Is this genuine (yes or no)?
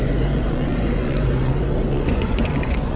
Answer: no